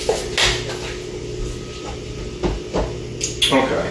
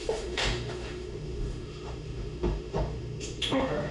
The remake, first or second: second